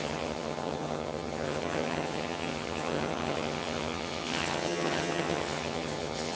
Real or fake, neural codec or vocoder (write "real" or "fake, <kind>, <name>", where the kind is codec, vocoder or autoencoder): fake, vocoder, HiFi-GAN